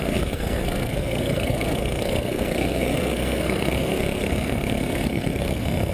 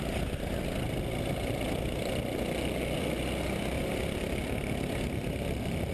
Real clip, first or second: second